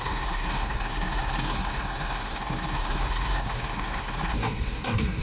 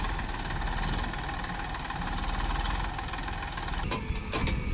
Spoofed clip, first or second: first